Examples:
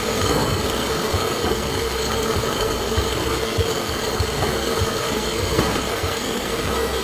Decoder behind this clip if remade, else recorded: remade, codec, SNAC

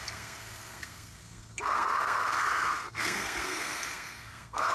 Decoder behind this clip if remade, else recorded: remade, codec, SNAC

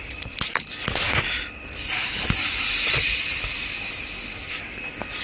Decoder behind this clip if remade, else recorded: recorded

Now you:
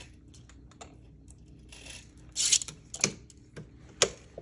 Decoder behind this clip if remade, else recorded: recorded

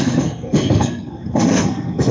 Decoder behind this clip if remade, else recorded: remade, codec, SNAC